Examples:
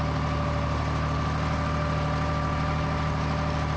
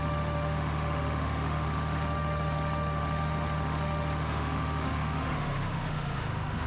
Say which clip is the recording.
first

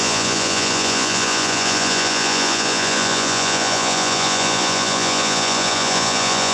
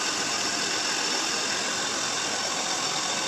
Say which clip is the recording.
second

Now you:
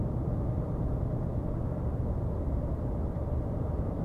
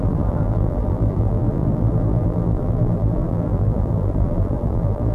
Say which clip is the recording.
first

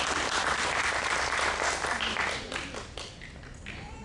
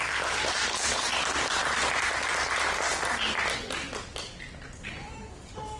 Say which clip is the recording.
second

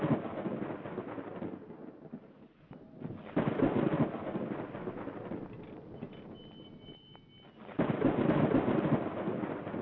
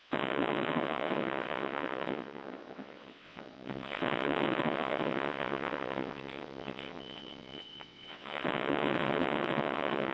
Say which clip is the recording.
first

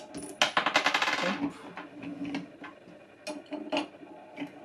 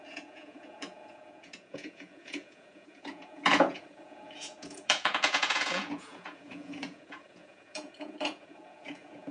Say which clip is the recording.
first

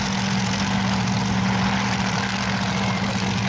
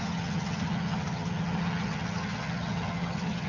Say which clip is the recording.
first